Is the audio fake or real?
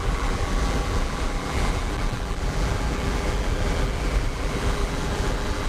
fake